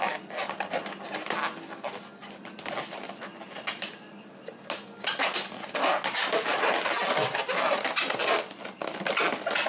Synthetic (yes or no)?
no